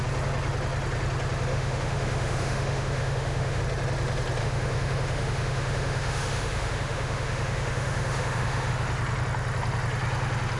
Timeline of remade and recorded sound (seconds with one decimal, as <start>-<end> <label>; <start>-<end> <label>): 0.0-1.5 recorded; 1.5-3.6 remade; 3.6-4.4 recorded; 4.4-8.7 remade; 8.7-10.6 recorded